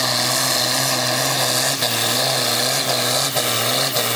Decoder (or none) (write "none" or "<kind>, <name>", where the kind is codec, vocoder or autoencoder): none